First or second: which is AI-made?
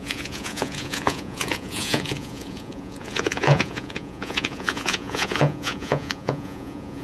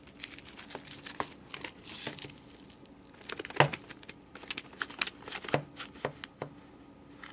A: first